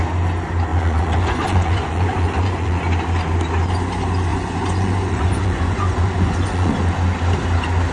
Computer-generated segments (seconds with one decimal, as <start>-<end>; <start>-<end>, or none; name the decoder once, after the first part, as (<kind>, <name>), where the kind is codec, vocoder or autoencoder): 0.7-2.8 (vocoder, Vocos); 4.3-6.8